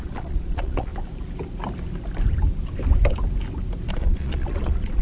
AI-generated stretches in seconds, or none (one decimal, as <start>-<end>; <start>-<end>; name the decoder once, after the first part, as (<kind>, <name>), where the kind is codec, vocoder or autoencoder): 0.0-0.9 (vocoder, Vocos); 3.9-5.0